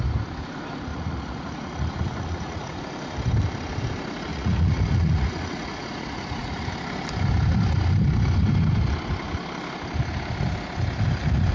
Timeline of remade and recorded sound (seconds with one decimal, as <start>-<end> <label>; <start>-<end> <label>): 0.0-0.9 recorded; 0.9-2.8 remade; 2.8-4.3 recorded; 4.3-6.7 remade; 6.7-11.5 recorded